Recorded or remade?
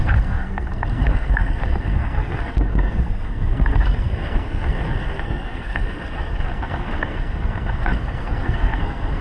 remade